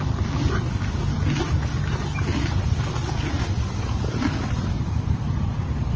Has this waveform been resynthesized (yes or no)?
no